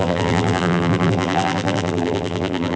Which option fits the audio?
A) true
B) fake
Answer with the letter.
B